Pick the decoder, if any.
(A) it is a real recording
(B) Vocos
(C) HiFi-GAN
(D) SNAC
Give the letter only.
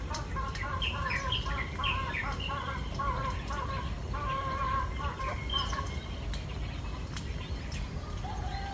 A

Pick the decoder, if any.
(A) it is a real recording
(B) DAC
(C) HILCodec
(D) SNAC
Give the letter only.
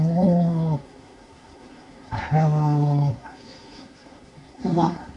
D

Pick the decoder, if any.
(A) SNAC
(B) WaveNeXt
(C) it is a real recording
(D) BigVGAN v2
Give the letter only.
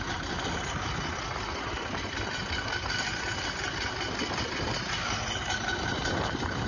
C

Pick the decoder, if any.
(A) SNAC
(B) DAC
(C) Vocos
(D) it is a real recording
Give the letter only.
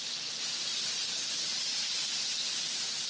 D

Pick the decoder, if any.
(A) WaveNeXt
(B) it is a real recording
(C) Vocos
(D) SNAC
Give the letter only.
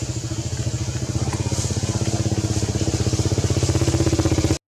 B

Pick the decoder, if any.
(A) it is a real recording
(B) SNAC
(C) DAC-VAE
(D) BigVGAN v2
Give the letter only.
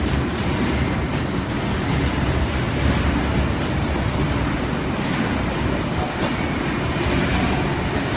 A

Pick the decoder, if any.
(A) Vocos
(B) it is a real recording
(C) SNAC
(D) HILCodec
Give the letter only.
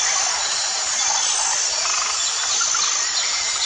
B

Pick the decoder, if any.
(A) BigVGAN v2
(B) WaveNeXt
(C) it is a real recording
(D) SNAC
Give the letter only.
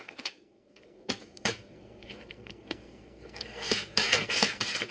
D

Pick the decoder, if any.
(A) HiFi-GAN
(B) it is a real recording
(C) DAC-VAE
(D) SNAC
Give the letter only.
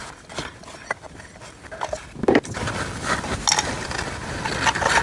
B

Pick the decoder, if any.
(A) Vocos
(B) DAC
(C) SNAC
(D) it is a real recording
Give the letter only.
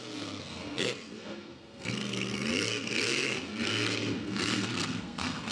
C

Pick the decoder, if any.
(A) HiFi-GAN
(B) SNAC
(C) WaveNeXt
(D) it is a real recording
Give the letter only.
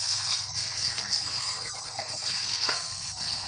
B